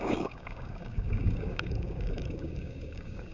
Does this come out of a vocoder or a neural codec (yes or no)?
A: yes